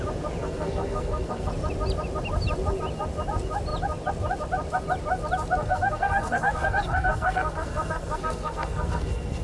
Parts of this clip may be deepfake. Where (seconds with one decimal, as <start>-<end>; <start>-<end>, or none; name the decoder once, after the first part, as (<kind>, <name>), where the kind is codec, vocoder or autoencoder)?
0.4-1.5 (codec, SNAC); 5.6-9.4

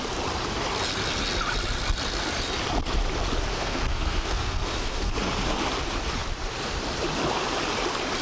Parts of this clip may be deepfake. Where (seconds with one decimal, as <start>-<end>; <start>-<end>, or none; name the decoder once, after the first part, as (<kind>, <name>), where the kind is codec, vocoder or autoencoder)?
3.5-5.1 (codec, SNAC)

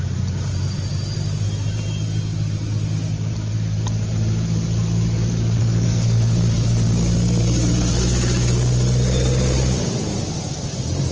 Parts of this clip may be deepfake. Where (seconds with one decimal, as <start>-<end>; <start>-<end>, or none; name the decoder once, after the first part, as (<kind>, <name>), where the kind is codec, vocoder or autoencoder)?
5.6-6.3 (codec, SNAC)

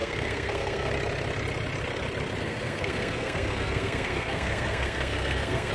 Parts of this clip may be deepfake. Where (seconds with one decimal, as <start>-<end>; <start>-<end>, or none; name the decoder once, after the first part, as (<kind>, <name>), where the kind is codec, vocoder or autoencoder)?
0.0-0.9 (codec, SNAC); 2.4-5.7

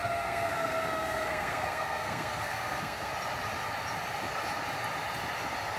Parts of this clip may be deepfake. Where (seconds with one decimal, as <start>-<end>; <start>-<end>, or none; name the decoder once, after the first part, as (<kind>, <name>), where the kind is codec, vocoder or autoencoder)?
0.0-3.1 (codec, SNAC)

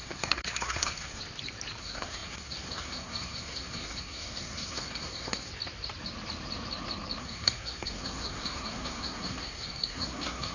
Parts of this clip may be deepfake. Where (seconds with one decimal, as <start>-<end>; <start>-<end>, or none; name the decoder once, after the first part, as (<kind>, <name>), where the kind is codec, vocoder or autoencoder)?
0.0-1.2 (codec, SNAC); 1.8-5.5; 7.2-10.5

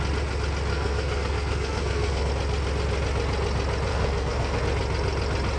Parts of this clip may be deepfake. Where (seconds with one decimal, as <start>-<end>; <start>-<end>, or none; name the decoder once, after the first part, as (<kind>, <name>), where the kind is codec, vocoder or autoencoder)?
0.7-2.3 (codec, SNAC); 3.9-4.6

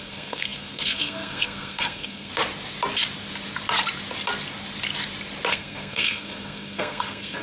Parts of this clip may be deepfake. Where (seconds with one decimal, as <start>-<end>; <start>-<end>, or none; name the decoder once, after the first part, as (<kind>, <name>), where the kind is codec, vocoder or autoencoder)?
0.0-2.3 (codec, SNAC); 5.5-7.4